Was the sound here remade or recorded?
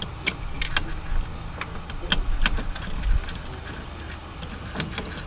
recorded